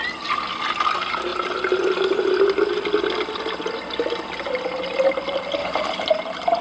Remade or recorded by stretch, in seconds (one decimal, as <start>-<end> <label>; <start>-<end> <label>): 0.0-5.6 recorded; 5.6-6.1 remade; 6.1-6.6 recorded